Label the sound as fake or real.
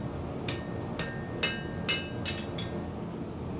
real